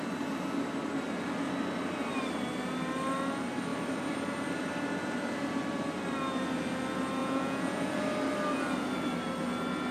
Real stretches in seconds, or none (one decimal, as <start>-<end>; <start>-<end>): 0.0-7.2; 8.0-9.9